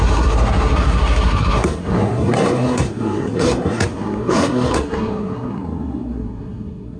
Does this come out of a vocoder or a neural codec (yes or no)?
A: yes